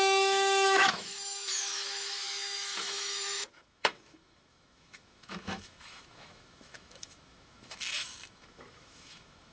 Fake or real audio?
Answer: fake